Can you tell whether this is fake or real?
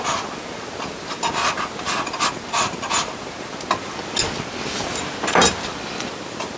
real